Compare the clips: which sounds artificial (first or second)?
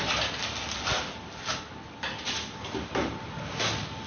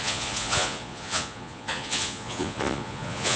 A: second